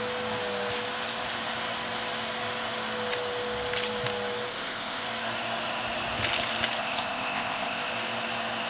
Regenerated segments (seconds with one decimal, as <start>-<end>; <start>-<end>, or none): 4.5-5.0; 6.8-7.9